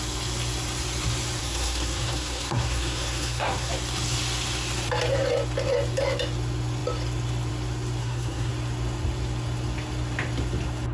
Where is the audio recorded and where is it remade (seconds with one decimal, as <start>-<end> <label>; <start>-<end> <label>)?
0.0-1.4 recorded; 1.4-3.7 remade; 3.7-8.0 recorded; 8.0-8.5 remade; 8.5-10.9 recorded